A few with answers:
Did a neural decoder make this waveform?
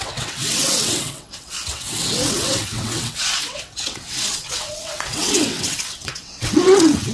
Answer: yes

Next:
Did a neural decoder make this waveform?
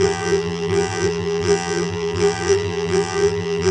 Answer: yes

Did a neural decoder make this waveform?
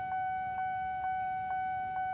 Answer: no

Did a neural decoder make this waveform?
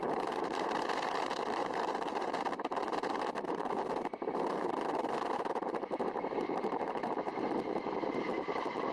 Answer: yes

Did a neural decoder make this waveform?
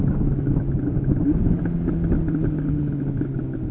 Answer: no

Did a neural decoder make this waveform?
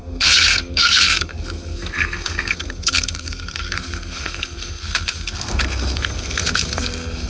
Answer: yes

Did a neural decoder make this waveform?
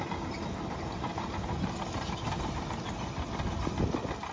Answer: no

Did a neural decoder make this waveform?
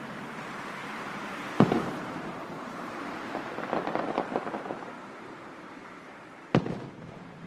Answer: yes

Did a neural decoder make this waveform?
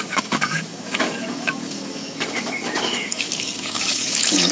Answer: yes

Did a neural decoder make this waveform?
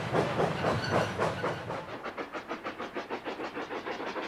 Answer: no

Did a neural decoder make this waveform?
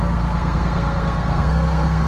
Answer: yes